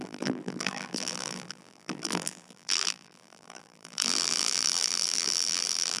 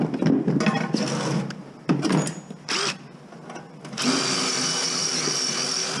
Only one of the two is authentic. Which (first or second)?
second